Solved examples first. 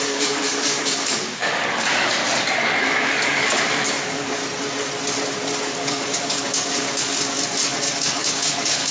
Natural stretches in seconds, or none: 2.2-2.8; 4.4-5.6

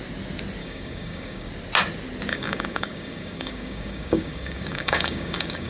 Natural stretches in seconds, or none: 0.0-0.6; 1.5-2.3